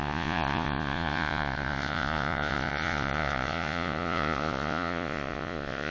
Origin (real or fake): fake